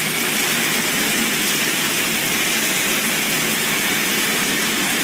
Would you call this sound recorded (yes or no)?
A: yes